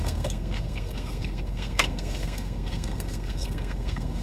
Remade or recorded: remade